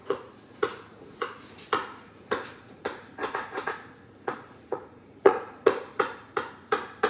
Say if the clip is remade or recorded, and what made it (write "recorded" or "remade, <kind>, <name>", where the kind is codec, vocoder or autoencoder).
remade, vocoder, Vocos